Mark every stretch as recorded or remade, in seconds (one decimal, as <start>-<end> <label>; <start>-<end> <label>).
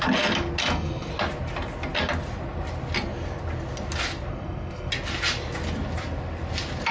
0.0-0.6 recorded; 0.6-1.1 remade; 1.1-4.3 recorded; 4.3-4.9 remade; 4.9-6.9 recorded